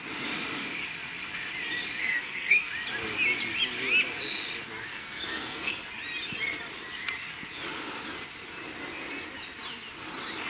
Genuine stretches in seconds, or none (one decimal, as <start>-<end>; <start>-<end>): 0.0-2.0; 2.7-4.9; 5.7-10.5